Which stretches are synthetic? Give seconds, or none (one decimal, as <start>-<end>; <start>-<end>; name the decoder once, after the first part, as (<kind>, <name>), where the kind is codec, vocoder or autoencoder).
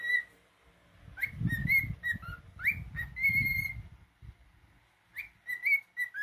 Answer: 1.6-2.4 (vocoder, BigVGAN v2); 3.5-4.8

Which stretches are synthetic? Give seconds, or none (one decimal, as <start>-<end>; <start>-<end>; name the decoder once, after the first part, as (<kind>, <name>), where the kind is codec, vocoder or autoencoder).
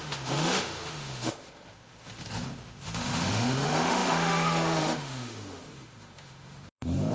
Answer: 0.0-7.1 (autoencoder, DAC-VAE)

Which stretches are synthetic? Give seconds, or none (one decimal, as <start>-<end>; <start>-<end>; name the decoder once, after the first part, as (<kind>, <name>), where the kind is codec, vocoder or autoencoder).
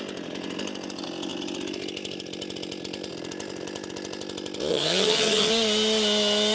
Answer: 4.7-5.5 (vocoder, HiFi-GAN)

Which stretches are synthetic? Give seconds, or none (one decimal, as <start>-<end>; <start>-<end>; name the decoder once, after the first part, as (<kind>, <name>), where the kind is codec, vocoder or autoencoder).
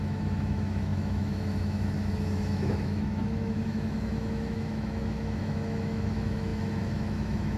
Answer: 0.0-7.6 (autoencoder, DAC-VAE)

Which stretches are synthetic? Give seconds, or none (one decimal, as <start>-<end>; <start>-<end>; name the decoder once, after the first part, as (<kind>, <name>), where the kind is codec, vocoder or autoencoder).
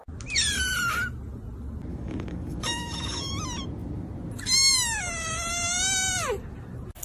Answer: 1.9-3.3 (codec, DAC)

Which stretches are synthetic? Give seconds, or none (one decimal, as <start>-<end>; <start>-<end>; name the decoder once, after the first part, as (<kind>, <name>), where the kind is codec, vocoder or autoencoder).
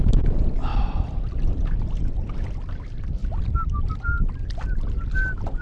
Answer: 0.0-0.7 (vocoder, BigVGAN v2); 1.3-3.2; 3.9-5.6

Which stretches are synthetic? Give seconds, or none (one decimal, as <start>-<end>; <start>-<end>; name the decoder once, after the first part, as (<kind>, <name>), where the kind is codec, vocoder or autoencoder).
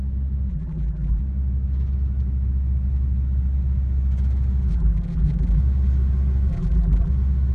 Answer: 0.5-1.2 (vocoder, BigVGAN v2); 4.7-5.6; 6.5-7.1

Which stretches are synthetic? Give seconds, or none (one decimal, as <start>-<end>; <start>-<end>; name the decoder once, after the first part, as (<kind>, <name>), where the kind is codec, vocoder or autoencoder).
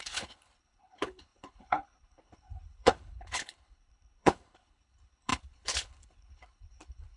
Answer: 0.0-7.2 (codec, HILCodec)